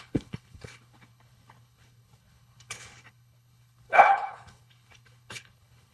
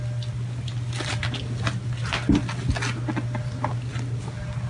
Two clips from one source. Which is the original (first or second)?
second